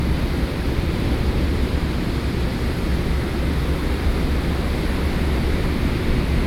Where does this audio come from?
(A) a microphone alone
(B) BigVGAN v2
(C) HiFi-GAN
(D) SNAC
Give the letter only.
A